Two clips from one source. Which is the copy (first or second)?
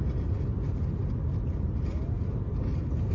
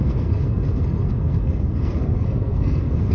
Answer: second